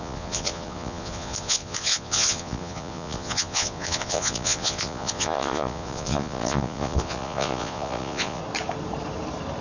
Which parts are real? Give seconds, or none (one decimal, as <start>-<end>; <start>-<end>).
8.4-9.6